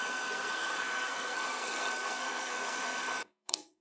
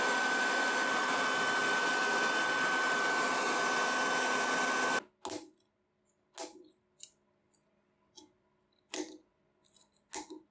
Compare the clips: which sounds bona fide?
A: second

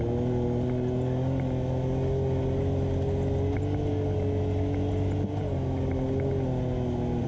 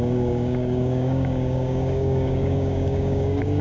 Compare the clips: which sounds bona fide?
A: first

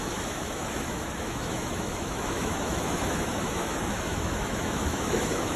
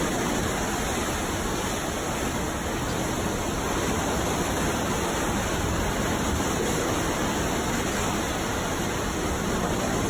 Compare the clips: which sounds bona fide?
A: second